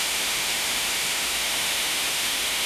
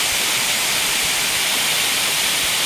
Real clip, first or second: second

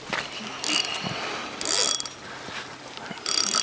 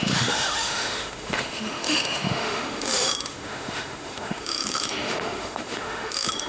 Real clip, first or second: first